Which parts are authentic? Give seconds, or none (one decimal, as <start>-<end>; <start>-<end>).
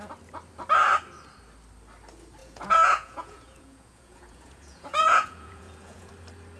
0.0-2.4; 6.1-6.6